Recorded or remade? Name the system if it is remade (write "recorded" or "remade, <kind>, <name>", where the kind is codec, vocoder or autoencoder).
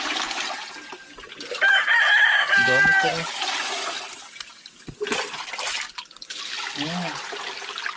recorded